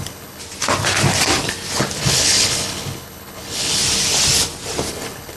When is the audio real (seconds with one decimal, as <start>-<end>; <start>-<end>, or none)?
0.4-2.0; 3.8-4.9